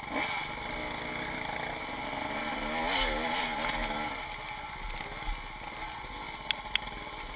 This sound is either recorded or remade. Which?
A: recorded